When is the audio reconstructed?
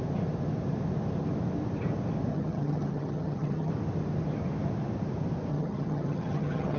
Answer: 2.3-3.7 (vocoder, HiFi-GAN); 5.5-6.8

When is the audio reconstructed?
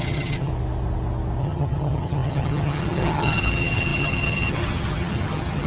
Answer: 0.0-0.5 (vocoder, HiFi-GAN); 1.4-5.7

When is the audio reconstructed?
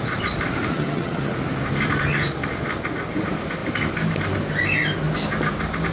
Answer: 0.7-1.3 (vocoder, HiFi-GAN)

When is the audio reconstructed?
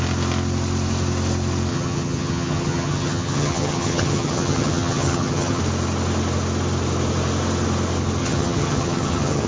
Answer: 1.7-5.6 (vocoder, HiFi-GAN); 8.2-9.5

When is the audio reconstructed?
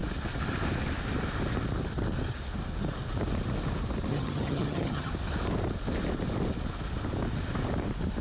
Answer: 4.1-5.1 (vocoder, HiFi-GAN)